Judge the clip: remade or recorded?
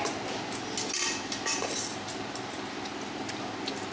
recorded